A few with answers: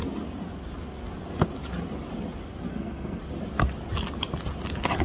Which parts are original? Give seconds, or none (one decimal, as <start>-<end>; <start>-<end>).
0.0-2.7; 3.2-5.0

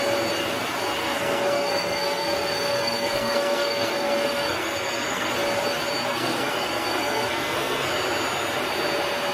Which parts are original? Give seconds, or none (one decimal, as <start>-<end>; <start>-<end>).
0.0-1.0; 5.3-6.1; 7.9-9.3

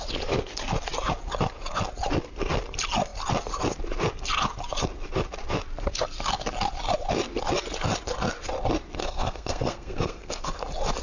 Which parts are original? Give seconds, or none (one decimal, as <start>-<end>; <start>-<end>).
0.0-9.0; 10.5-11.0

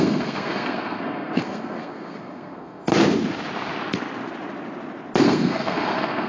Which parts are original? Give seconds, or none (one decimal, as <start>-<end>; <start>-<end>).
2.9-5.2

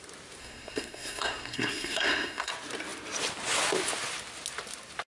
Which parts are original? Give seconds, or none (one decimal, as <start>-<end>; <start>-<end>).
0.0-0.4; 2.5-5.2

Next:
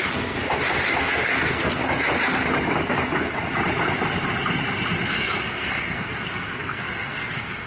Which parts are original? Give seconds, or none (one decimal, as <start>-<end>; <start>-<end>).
0.4-1.0; 1.8-5.1

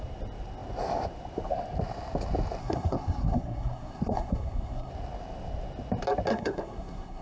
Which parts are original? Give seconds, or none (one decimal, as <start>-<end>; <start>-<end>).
0.0-2.6; 4.9-6.3